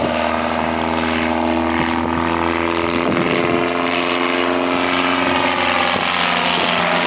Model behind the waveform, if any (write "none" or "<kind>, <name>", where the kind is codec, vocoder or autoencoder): none